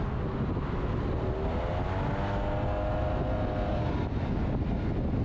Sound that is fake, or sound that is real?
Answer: real